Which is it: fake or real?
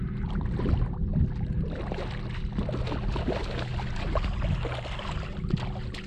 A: real